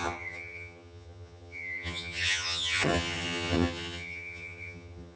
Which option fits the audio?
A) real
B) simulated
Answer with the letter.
B